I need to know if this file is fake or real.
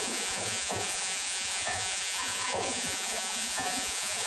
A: fake